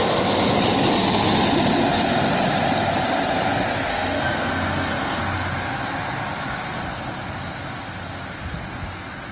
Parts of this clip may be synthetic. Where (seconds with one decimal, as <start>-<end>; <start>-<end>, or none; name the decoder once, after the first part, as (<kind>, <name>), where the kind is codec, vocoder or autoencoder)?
3.9-5.2 (codec, SNAC)